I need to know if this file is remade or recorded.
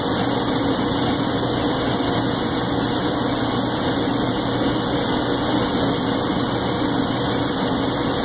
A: recorded